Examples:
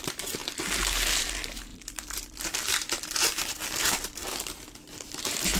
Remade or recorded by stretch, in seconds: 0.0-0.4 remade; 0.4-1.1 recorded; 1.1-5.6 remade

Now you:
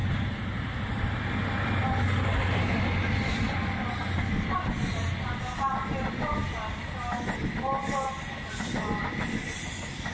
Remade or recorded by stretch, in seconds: 0.0-10.1 recorded

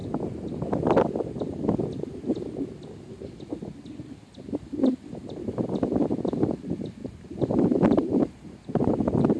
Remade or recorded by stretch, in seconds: 0.0-7.0 recorded; 7.0-9.0 remade; 9.0-9.4 recorded

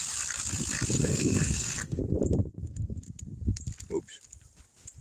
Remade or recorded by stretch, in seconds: 0.0-1.0 recorded; 1.0-2.0 remade; 2.0-2.4 recorded; 2.4-3.0 remade; 3.0-5.0 recorded

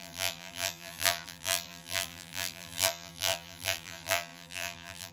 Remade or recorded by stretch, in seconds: 0.0-5.1 remade